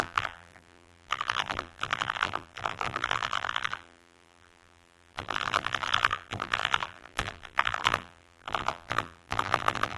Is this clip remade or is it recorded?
remade